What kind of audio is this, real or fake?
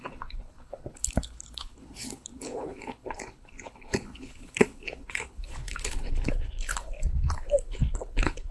fake